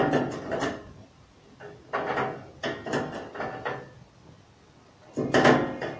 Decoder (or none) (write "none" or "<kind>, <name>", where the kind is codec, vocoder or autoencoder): none